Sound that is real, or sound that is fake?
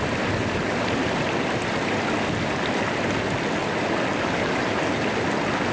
real